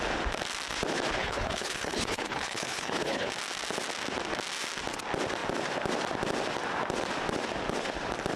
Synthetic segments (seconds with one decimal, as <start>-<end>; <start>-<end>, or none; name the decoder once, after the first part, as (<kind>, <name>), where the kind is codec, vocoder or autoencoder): 1.2-3.3 (codec, HILCodec)